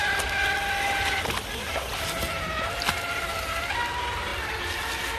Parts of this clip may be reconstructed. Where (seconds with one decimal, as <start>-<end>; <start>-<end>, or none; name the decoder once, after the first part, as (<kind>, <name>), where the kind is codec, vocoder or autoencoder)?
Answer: none